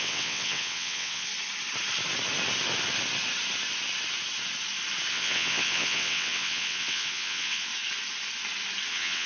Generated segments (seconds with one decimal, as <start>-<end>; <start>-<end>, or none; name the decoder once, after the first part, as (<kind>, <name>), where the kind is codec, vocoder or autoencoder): 0.0-1.3 (vocoder, WaveNeXt); 5.1-7.7; 8.9-9.3